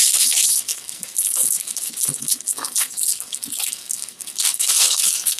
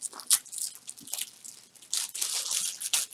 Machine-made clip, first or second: first